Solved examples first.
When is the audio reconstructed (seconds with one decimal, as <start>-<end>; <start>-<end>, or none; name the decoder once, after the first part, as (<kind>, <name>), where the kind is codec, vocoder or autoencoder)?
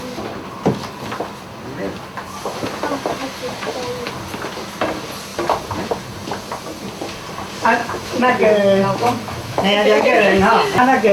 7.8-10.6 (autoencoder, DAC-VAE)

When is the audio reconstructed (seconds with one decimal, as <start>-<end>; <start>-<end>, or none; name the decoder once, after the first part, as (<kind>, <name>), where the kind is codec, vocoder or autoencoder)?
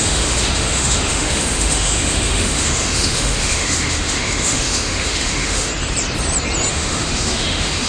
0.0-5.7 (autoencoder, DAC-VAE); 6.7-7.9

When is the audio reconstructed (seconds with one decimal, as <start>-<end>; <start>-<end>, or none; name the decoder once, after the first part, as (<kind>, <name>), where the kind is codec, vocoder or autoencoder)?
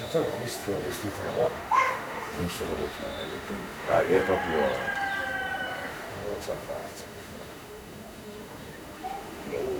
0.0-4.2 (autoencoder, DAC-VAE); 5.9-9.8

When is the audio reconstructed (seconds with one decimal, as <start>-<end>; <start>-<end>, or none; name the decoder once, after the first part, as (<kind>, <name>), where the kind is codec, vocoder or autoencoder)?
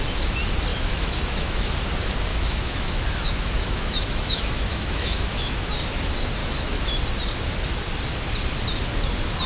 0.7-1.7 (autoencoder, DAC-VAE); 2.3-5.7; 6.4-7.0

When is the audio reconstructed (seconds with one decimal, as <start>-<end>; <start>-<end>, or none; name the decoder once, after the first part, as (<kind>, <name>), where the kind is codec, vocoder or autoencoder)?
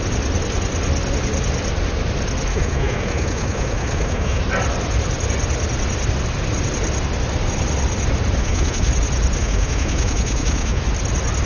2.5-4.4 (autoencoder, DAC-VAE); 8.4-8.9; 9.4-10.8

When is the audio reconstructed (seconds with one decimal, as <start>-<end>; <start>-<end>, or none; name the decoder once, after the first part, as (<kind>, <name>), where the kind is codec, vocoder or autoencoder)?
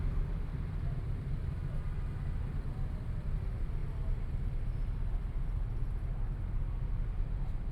none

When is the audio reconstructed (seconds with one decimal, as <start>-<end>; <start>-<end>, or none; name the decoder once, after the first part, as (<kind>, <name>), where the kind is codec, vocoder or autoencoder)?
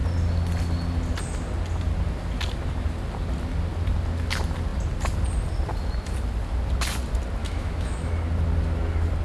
7.4-8.1 (autoencoder, DAC-VAE)